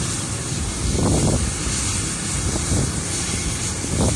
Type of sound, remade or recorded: recorded